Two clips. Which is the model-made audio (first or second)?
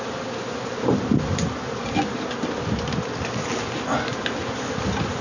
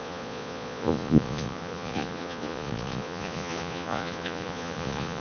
second